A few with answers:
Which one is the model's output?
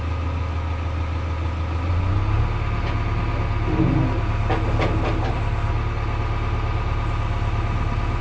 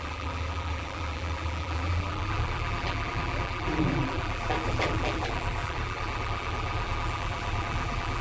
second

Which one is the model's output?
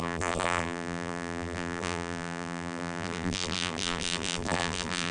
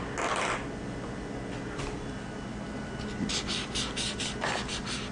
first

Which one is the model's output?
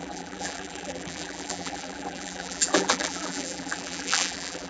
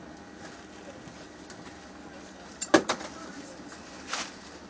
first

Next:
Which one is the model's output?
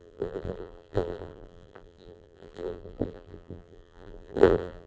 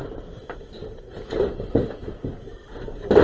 first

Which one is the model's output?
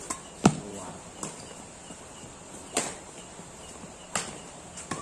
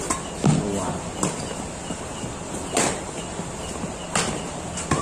first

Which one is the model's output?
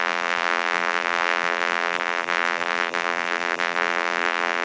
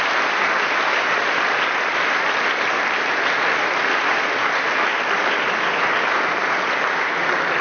first